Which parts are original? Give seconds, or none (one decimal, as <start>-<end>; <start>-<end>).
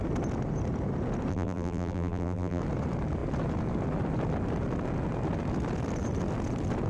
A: 0.0-1.3; 2.6-6.9